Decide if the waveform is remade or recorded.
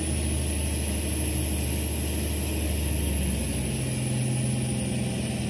recorded